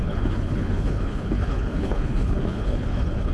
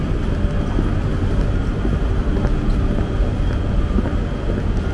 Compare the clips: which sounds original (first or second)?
second